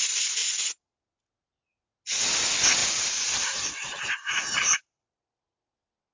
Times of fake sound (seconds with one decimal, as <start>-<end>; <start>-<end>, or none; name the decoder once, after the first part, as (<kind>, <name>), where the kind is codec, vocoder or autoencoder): 2.8-5.2 (vocoder, BigVGAN v2)

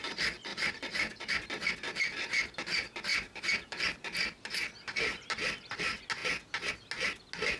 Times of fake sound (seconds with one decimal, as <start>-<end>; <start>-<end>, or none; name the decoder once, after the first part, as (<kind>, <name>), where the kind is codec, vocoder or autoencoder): 0.5-1.3 (vocoder, BigVGAN v2); 3.1-3.8

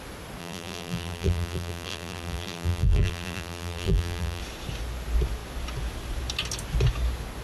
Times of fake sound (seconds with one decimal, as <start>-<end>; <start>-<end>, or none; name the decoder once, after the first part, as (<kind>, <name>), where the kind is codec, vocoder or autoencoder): 0.4-4.4 (vocoder, BigVGAN v2)